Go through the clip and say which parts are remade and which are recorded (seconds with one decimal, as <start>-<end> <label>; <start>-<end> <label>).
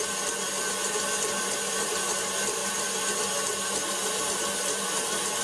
0.0-5.4 recorded